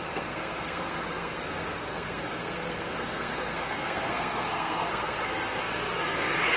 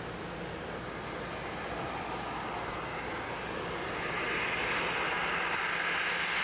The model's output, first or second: first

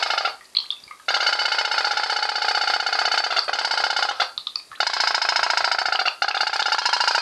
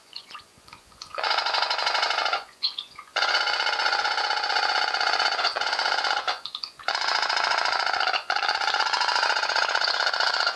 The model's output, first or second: second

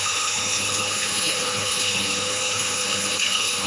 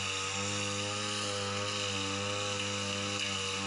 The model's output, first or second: first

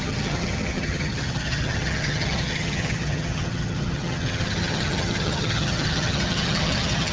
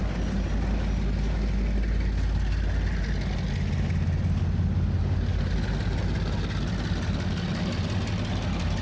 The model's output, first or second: first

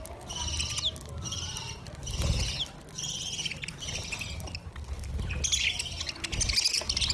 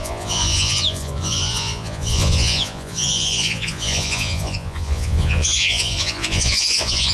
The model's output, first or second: second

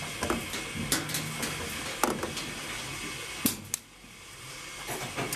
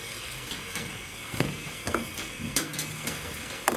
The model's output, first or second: second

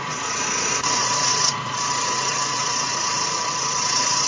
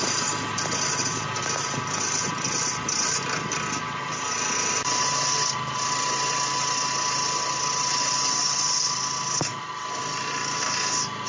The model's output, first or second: first